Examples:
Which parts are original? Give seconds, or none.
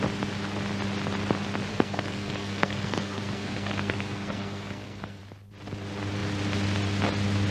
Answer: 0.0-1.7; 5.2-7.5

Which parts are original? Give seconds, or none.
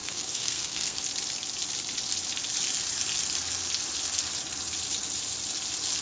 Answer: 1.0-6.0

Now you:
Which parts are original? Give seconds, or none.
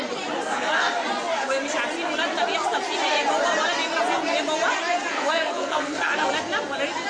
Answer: 0.0-0.4; 1.0-5.1; 6.3-7.1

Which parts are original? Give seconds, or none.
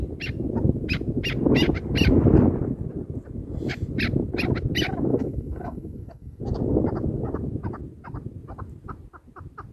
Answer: 0.0-5.1; 6.4-9.7